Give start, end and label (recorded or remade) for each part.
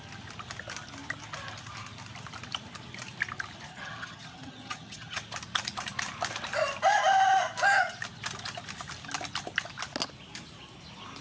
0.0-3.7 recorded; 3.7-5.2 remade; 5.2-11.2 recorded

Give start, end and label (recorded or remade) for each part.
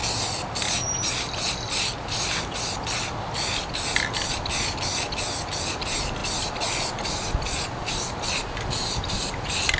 0.0-9.8 recorded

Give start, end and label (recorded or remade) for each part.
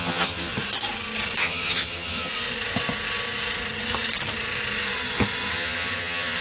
0.0-0.5 remade; 0.5-1.4 recorded; 1.4-2.3 remade; 2.3-5.5 recorded; 5.5-6.4 remade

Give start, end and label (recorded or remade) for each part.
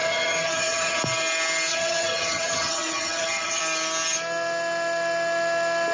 0.0-1.0 remade; 1.0-1.7 recorded; 1.7-3.6 remade; 3.6-5.9 recorded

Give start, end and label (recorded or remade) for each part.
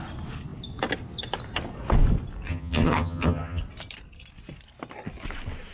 0.0-2.5 recorded; 2.5-3.6 remade; 3.6-5.7 recorded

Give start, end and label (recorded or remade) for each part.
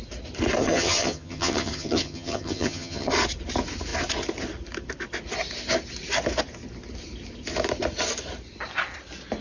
0.0-0.6 recorded; 0.6-3.1 remade; 3.1-9.4 recorded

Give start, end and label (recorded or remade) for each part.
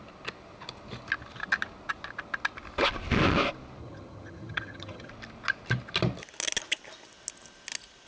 0.0-3.8 recorded; 3.8-5.1 remade; 5.1-8.1 recorded